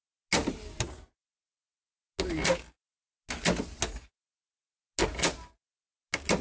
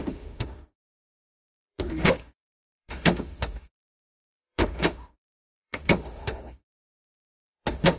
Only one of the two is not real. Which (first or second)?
second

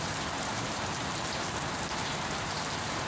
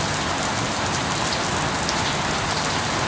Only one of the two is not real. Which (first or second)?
first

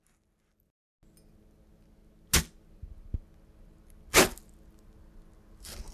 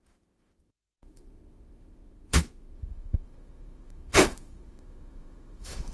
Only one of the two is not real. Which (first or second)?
second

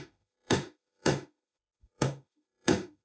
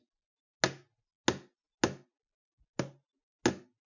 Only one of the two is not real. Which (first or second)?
first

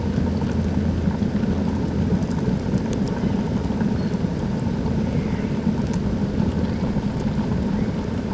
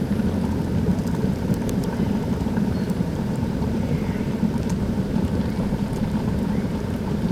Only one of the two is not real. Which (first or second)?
second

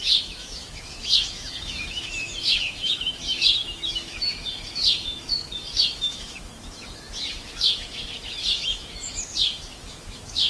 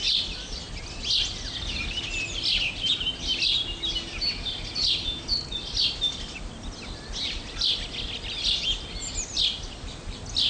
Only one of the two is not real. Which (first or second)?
first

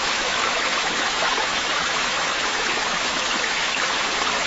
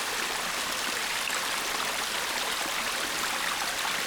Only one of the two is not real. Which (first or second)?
first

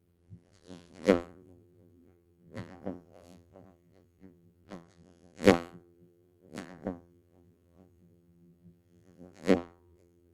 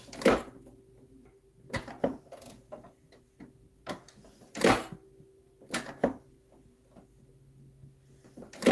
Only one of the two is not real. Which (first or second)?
first